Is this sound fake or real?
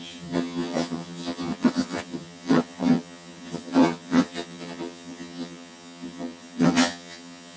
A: fake